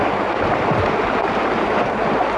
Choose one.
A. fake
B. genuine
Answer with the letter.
B